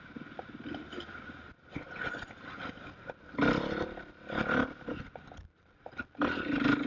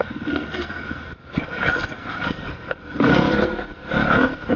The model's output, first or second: second